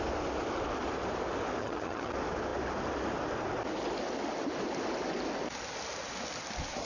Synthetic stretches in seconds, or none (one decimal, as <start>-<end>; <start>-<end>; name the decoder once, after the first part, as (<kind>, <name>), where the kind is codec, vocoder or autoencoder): 1.6-2.1 (vocoder, HiFi-GAN)